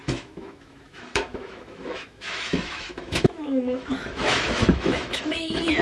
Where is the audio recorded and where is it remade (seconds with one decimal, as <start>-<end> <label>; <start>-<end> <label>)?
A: 0.0-5.8 remade